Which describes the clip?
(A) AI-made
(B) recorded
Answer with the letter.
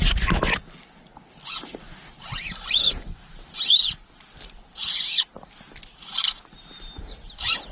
B